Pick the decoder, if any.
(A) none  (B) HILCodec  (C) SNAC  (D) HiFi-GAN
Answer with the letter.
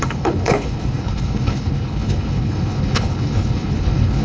B